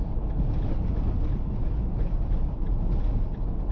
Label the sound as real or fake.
real